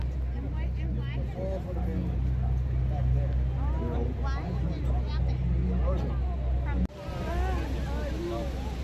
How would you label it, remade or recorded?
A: recorded